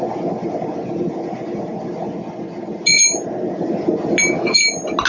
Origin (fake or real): real